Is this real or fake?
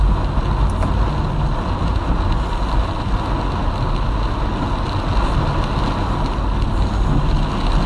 real